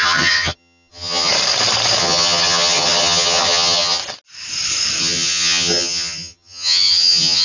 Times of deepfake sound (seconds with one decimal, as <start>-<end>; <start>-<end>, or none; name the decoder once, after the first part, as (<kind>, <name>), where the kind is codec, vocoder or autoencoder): 0.0-1.3 (vocoder, HiFi-GAN); 2.0-4.0; 5.0-7.4